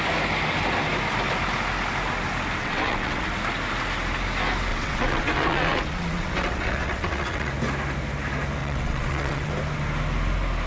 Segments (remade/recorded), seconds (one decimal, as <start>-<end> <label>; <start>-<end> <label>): 0.0-2.6 recorded; 2.6-3.3 remade; 3.3-4.7 recorded; 4.7-7.5 remade; 7.5-8.6 recorded; 8.6-9.5 remade; 9.5-10.7 recorded